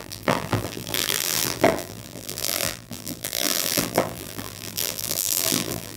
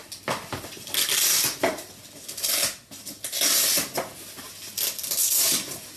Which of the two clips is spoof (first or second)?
first